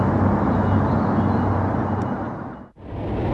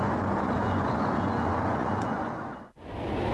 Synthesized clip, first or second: second